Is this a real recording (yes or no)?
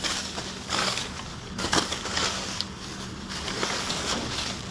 no